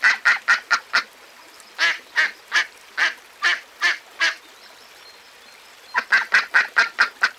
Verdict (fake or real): real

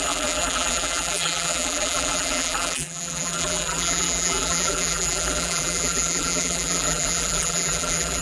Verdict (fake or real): fake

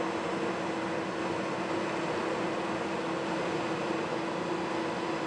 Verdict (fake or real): real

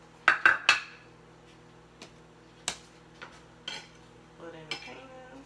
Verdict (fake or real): real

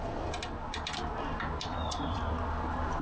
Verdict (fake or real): real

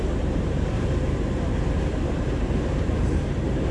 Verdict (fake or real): fake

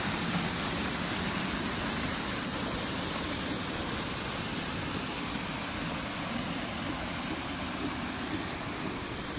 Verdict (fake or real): real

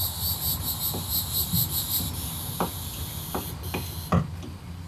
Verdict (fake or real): real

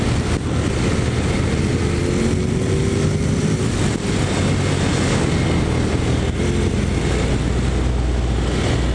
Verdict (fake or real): real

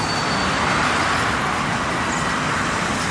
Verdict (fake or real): real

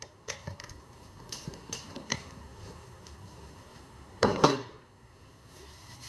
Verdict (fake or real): fake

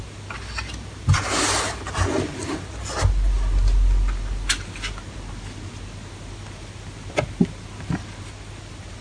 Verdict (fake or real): real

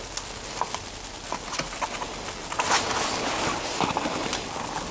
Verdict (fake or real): real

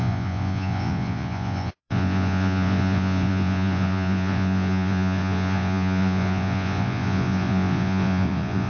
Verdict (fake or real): fake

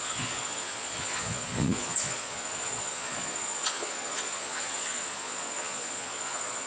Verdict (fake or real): fake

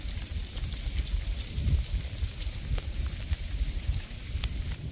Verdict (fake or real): real